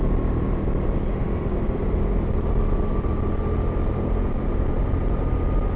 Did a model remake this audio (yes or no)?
no